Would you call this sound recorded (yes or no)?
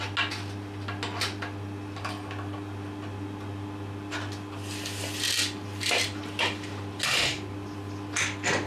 yes